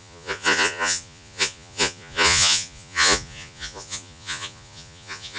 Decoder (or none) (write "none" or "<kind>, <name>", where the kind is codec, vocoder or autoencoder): vocoder, Vocos